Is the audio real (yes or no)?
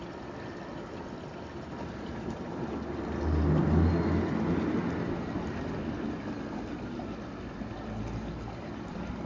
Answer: yes